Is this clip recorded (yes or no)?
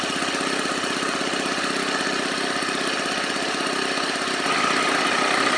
yes